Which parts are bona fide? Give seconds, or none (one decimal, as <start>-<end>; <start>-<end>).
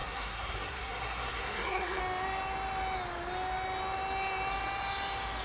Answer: 2.0-5.4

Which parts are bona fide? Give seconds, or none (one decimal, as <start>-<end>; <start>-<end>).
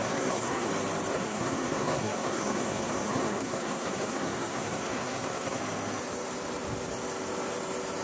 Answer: 0.7-1.1; 5.6-8.0